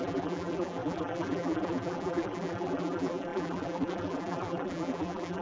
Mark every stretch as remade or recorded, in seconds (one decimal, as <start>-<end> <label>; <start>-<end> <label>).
0.0-5.4 remade